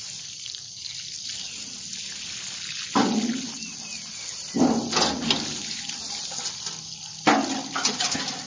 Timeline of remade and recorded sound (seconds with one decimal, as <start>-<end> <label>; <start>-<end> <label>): 0.0-2.0 remade; 2.0-3.9 recorded; 3.9-6.1 remade; 6.1-8.5 recorded